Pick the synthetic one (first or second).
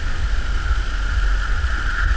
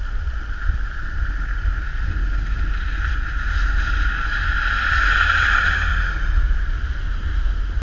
second